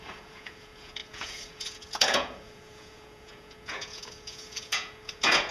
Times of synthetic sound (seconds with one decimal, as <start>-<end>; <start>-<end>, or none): 0.0-5.5